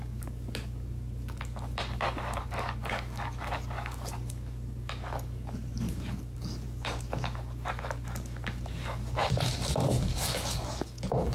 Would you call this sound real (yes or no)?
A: no